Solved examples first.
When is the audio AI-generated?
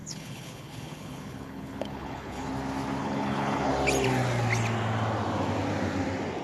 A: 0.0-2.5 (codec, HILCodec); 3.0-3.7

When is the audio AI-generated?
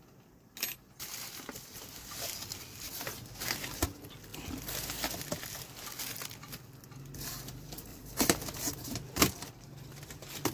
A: 7.9-9.5 (vocoder, BigVGAN v2)